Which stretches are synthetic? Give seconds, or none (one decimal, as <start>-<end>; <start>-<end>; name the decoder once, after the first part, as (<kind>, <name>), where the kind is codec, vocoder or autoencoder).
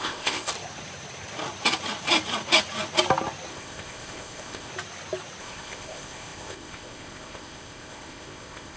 0.0-0.5 (codec, ZipCodec); 3.5-4.7; 5.4-8.8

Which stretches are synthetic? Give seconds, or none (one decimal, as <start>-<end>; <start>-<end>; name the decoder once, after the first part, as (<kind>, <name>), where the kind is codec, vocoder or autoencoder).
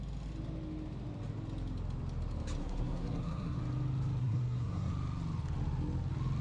2.6-3.6 (codec, SNAC); 4.2-4.9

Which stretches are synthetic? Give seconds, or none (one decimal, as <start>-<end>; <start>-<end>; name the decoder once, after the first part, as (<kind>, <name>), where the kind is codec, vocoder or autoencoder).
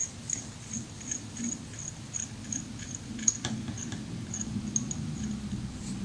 none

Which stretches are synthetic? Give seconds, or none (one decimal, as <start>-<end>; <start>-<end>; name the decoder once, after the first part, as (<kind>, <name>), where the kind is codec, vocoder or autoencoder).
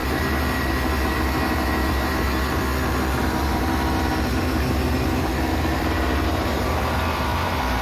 0.0-2.6 (vocoder, BigVGAN v2); 3.2-7.8